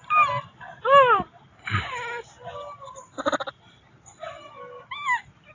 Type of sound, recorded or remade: recorded